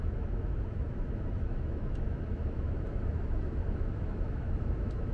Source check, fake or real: fake